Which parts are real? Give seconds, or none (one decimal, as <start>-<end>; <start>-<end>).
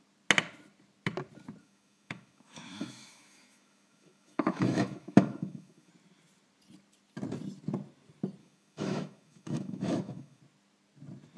0.0-1.6; 5.9-8.4; 10.4-11.4